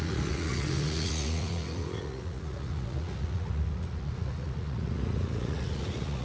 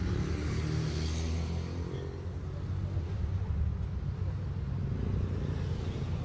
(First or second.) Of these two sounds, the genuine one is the second